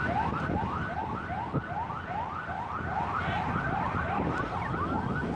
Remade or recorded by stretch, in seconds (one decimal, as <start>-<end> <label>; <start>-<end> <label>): 0.0-5.4 recorded